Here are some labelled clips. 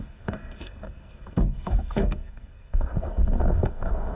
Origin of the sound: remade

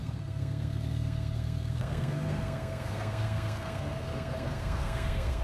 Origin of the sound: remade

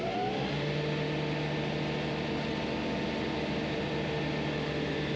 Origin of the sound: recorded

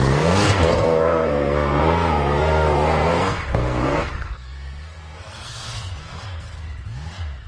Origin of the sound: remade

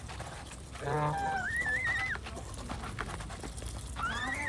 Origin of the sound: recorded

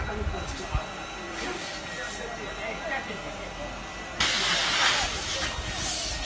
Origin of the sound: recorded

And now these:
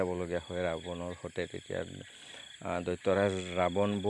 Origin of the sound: recorded